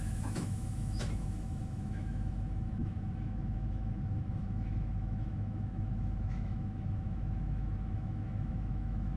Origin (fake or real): fake